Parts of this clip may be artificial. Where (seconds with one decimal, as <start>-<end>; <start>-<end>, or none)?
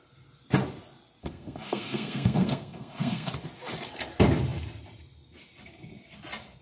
1.2-3.3